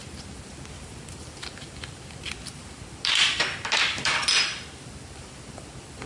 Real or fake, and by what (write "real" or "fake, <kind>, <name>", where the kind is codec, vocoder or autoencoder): real